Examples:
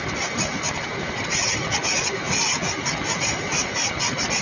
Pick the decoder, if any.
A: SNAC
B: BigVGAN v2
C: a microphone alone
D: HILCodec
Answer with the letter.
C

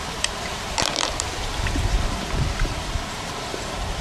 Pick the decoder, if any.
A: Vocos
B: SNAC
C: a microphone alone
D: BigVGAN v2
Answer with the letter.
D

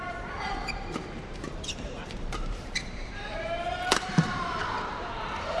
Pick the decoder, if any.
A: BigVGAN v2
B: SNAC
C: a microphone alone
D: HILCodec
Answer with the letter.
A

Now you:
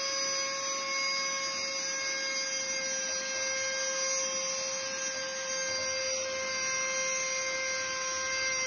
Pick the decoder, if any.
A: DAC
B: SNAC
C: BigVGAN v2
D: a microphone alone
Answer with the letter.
D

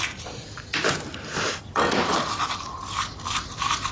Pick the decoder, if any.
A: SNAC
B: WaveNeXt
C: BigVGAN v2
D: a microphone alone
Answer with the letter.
C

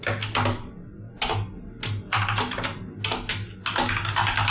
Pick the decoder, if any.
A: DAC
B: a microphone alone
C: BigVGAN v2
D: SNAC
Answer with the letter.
B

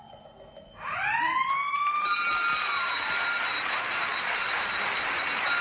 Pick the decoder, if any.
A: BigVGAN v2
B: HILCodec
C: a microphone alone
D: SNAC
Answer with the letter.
C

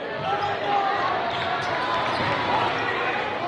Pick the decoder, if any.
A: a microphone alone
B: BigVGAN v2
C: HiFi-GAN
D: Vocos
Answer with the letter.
B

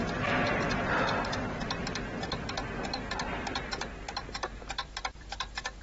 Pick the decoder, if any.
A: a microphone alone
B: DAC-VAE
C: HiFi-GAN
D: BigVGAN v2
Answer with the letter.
D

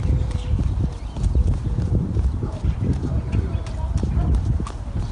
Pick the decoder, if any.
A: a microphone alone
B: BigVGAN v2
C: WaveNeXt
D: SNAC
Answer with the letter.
B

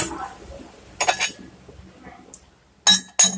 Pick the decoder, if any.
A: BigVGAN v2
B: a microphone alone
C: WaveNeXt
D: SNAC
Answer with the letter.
B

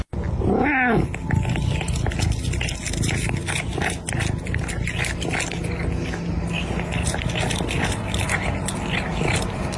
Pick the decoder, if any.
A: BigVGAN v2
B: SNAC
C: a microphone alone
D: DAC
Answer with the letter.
C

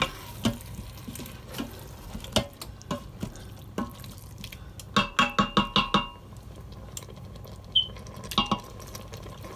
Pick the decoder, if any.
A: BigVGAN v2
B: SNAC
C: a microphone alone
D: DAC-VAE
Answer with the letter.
C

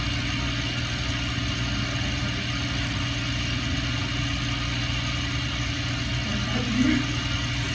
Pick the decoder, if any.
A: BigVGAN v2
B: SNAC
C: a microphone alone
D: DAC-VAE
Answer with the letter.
C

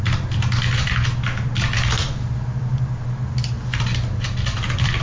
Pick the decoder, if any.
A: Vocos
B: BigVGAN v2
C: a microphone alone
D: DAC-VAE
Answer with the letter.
C